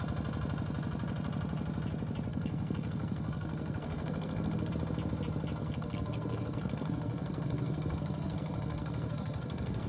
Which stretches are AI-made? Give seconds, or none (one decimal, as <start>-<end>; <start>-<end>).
2.3-4.7; 5.6-9.9